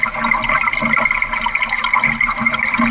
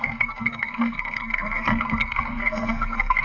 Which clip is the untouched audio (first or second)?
first